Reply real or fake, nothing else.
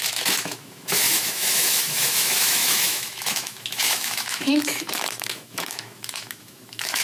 fake